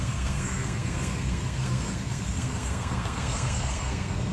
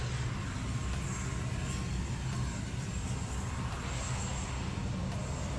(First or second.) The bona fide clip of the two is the second